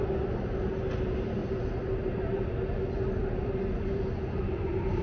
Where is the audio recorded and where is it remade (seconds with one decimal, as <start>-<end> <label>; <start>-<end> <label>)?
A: 0.0-5.0 recorded